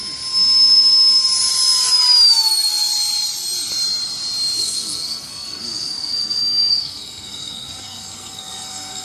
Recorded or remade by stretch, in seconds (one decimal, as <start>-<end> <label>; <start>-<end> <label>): 0.0-4.6 recorded; 4.6-9.0 remade